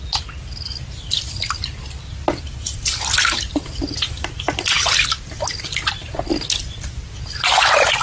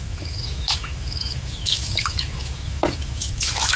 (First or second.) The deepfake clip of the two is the second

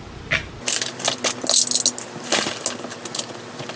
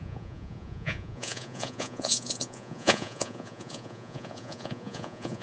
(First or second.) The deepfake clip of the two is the second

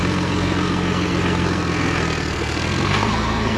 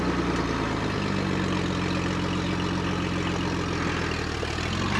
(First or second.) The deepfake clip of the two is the first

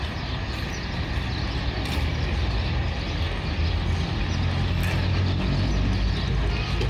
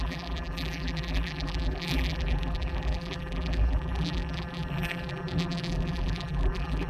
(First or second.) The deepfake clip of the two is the second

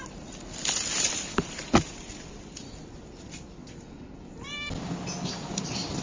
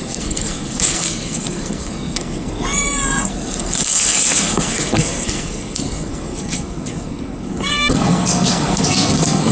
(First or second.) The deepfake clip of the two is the second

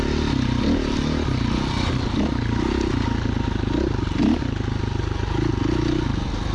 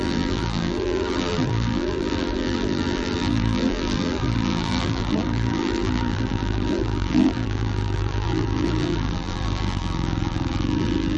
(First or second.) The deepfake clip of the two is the second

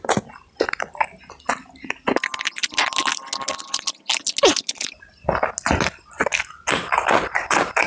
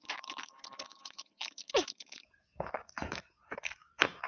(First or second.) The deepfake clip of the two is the second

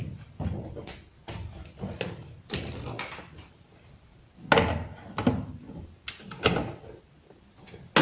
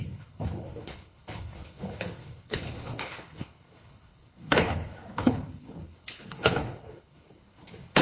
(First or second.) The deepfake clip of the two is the second